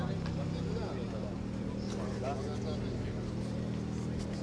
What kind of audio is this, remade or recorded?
recorded